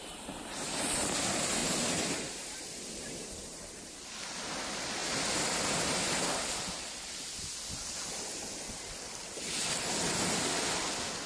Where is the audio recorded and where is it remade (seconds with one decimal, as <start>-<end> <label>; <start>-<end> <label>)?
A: 0.0-0.5 remade; 0.5-1.6 recorded; 1.6-4.4 remade; 4.4-11.3 recorded